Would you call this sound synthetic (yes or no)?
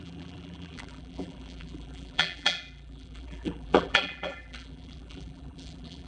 yes